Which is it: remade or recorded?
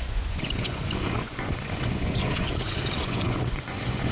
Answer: remade